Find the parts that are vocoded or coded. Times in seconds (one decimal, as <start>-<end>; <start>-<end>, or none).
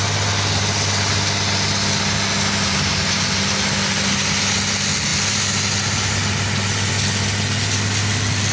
none